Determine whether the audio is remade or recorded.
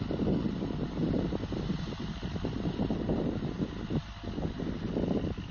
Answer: recorded